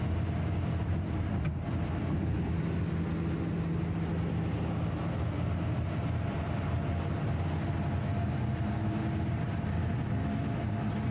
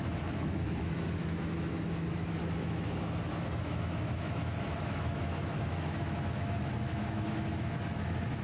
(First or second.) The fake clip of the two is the second